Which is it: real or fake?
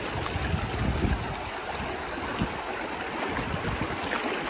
real